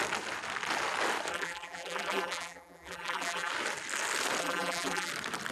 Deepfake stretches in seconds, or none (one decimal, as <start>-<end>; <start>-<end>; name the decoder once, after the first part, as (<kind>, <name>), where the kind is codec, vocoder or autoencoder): 1.3-3.5 (vocoder, BigVGAN v2); 4.4-5.1